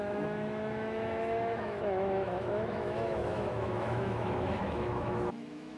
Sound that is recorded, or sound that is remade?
remade